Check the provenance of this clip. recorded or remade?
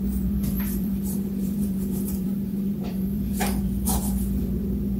remade